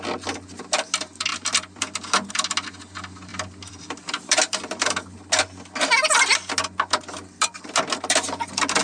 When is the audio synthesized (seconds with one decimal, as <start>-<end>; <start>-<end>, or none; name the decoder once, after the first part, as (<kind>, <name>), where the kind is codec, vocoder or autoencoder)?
1.3-2.3 (vocoder, BigVGAN v2); 3.3-4.9